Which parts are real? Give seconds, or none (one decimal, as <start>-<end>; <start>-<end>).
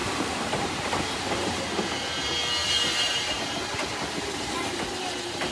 1.6-2.6; 4.7-5.5